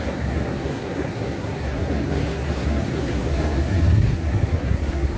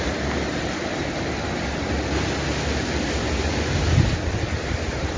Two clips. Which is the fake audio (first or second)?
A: first